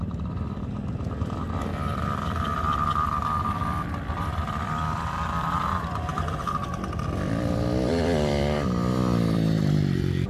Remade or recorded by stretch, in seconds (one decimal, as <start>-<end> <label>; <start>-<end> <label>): 0.0-10.3 remade